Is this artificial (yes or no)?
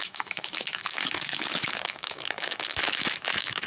yes